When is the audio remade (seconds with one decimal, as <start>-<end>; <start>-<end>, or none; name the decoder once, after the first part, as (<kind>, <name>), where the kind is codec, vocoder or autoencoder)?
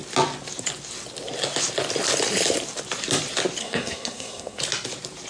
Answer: 3.6-4.6 (codec, SNAC)